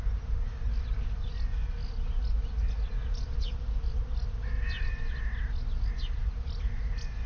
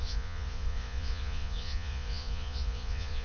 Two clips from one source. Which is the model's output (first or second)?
second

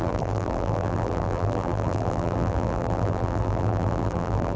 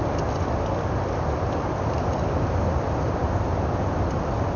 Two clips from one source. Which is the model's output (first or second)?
first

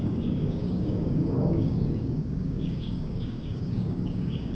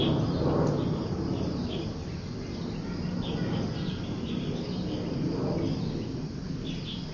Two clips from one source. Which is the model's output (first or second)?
first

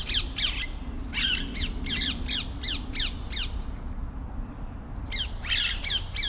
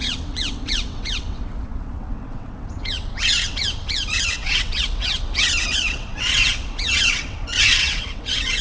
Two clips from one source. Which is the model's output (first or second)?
second